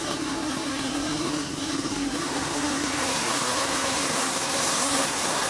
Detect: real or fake fake